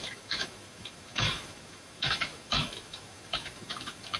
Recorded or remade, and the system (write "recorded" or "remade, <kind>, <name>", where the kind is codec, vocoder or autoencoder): remade, autoencoder, DAC-VAE